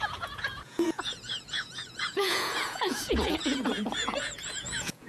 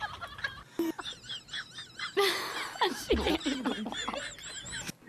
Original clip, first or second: second